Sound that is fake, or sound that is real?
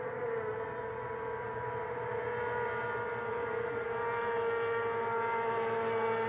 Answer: real